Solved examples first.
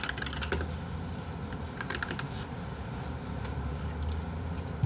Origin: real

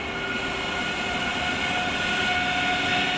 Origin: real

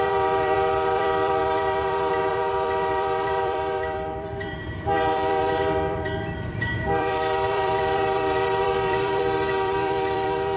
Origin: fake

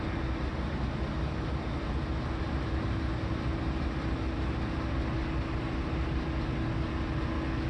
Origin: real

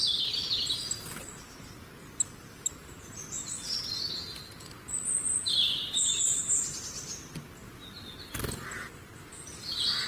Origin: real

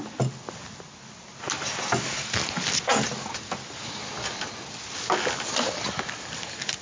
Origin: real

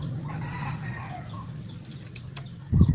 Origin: real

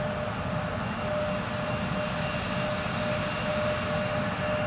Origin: real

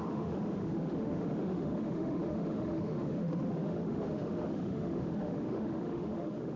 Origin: fake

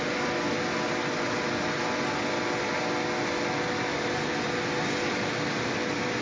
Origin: real